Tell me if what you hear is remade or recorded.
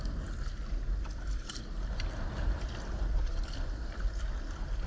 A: recorded